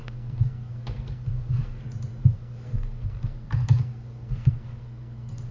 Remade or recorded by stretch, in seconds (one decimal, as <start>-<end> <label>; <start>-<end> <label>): 0.0-1.8 remade; 1.8-2.2 recorded; 2.2-5.5 remade